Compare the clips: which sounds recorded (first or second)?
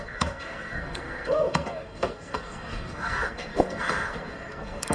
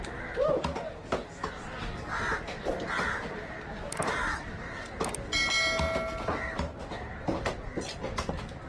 second